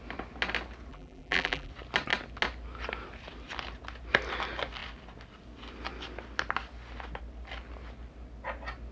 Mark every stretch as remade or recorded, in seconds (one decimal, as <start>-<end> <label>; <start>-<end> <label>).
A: 0.0-0.9 recorded; 0.9-1.7 remade; 1.7-8.9 recorded